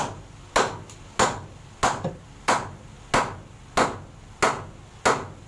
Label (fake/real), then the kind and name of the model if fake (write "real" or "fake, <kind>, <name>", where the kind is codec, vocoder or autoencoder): real